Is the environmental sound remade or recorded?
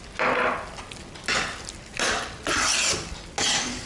recorded